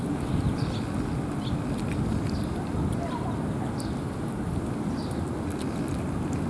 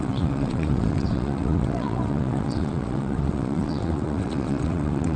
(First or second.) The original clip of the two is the first